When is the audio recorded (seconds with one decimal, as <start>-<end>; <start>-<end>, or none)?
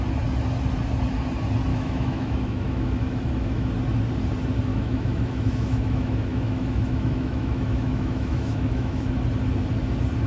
0.0-1.7; 3.7-4.7; 9.1-10.3